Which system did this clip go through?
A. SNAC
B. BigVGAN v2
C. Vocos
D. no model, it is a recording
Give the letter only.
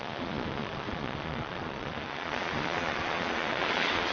C